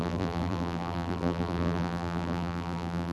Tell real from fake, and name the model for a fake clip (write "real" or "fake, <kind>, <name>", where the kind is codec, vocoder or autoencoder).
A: fake, vocoder, BigVGAN v2